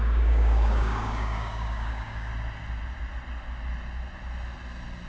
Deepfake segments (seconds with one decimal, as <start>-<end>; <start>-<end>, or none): 0.0-2.3